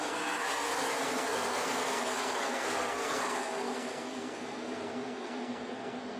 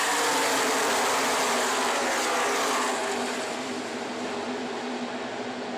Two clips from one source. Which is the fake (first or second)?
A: first